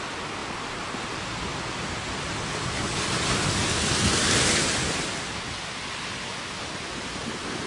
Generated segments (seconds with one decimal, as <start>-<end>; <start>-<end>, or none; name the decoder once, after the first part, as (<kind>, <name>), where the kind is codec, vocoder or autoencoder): none